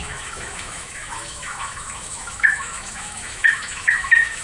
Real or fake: fake